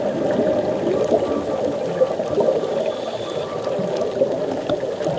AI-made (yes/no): no